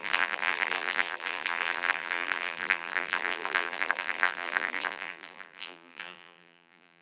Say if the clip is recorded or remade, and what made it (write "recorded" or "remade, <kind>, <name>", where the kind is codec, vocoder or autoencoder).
remade, vocoder, BigVGAN v2